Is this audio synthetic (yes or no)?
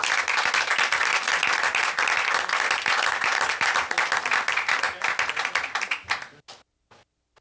no